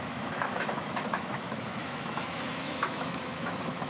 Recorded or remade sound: remade